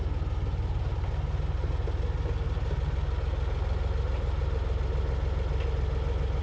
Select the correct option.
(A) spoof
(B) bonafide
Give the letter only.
B